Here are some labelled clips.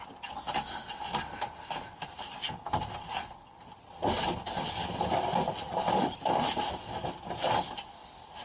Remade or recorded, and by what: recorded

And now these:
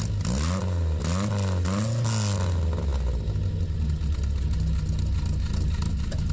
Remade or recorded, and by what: recorded